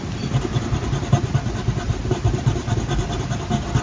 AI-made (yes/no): no